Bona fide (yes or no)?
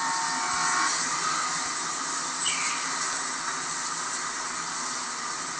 yes